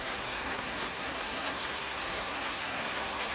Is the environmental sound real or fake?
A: fake